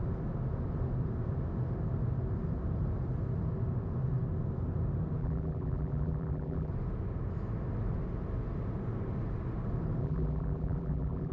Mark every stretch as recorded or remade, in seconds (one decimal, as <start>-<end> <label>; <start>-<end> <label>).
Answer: 0.0-5.2 recorded; 5.2-6.7 remade; 6.7-10.0 recorded; 10.0-11.3 remade